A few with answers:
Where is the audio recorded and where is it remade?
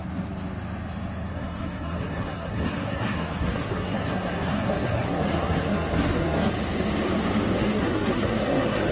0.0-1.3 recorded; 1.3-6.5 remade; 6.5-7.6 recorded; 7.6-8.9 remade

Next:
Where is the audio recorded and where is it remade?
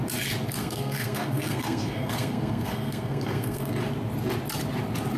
0.0-0.6 recorded; 0.6-3.7 remade; 3.7-5.2 recorded